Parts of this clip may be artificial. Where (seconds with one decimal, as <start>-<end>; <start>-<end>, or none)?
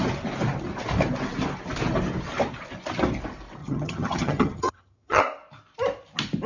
3.6-5.2